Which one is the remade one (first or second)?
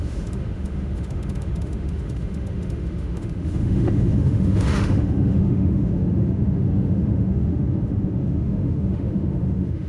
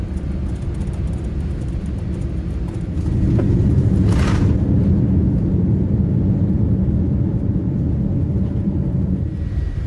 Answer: first